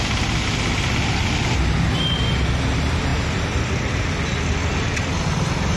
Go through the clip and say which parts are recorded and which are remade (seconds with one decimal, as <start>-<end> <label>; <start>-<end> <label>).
0.0-5.8 recorded